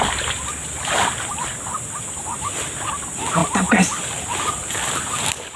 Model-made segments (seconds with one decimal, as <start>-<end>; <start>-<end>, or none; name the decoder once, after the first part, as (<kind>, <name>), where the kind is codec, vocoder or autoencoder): none